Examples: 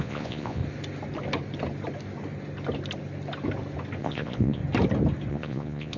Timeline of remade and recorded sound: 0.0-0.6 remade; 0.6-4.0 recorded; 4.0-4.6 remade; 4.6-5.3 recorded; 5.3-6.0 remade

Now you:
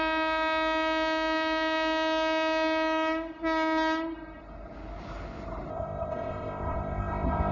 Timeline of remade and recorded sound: 0.0-5.7 recorded; 5.7-7.5 remade

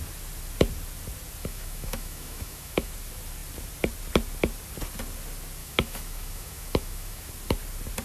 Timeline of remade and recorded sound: 0.0-1.4 recorded; 1.4-2.9 remade; 2.9-5.6 recorded; 5.6-7.3 remade; 7.3-8.0 recorded

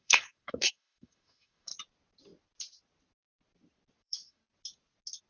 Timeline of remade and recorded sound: 0.0-1.7 remade; 1.7-4.0 recorded; 4.0-4.4 remade; 4.4-5.3 recorded

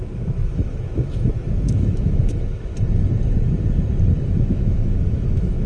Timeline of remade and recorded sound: 0.0-2.7 remade; 2.7-4.2 recorded; 4.2-5.7 remade

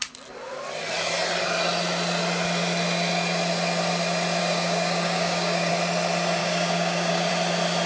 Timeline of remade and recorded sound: 0.0-4.4 recorded; 4.4-5.7 remade; 5.7-6.4 recorded; 6.4-7.3 remade; 7.3-7.9 recorded